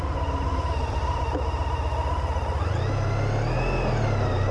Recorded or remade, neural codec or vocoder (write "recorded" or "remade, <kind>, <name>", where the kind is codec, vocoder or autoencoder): recorded